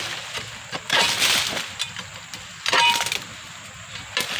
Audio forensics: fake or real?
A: real